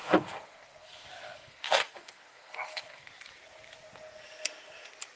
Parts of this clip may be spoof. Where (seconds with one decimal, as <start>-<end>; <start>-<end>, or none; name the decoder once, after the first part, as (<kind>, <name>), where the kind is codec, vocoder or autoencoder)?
0.0-3.1 (codec, SNAC)